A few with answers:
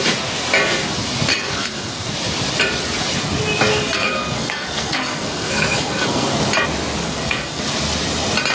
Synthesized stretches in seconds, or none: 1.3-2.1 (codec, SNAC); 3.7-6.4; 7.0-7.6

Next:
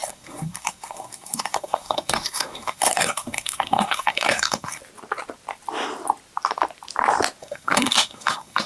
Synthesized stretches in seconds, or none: 0.0-4.8 (codec, SNAC); 7.4-8.7